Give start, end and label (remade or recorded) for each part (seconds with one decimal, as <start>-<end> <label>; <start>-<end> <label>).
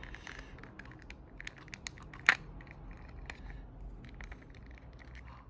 0.0-5.5 recorded